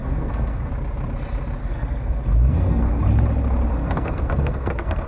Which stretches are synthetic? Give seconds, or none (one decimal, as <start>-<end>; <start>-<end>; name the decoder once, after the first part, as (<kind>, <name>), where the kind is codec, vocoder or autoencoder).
0.0-0.7 (codec, SNAC); 1.6-3.0; 3.7-5.1